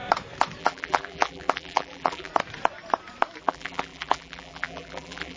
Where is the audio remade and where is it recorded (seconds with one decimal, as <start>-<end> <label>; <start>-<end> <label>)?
0.0-0.6 recorded; 0.6-2.3 remade; 2.3-3.4 recorded; 3.4-5.4 remade